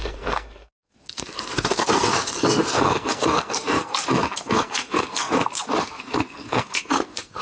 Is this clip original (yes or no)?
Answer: no